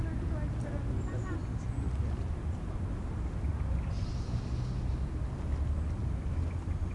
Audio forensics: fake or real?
real